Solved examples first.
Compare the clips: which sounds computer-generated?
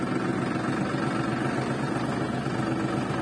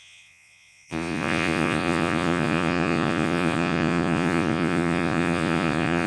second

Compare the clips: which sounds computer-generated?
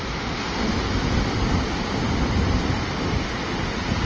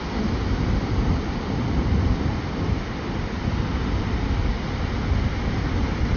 second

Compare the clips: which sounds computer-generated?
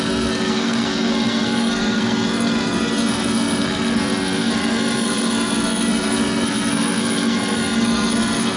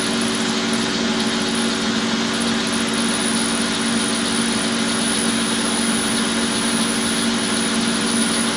first